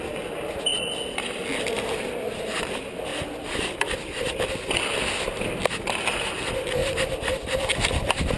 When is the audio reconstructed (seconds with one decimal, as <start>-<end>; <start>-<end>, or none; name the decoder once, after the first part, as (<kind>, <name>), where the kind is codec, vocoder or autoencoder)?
none